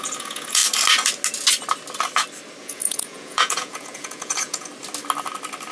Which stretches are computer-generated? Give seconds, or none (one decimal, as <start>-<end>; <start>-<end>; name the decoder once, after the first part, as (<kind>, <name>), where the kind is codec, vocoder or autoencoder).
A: 0.0-0.6 (vocoder, Vocos); 2.6-4.7